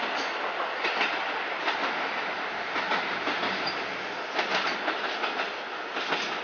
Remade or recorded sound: recorded